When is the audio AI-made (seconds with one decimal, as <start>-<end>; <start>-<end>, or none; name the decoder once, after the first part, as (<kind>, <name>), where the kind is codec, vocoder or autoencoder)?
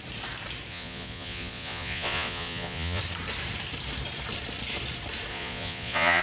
0.7-3.0 (vocoder, Vocos); 5.3-6.2